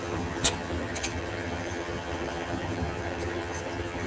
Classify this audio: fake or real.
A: fake